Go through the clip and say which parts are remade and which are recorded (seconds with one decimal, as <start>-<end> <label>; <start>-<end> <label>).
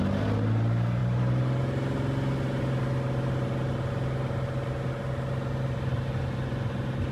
0.0-7.1 recorded